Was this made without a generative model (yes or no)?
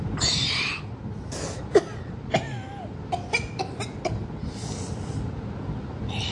yes